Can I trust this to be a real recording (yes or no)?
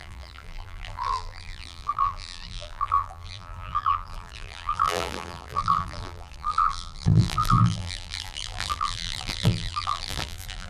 no